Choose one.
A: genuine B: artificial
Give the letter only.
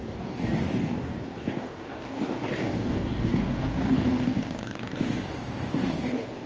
B